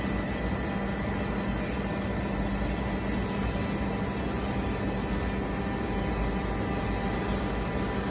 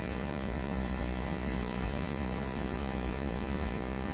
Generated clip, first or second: second